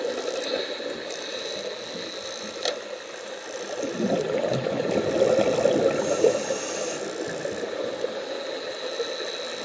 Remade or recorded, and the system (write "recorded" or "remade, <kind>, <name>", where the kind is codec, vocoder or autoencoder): recorded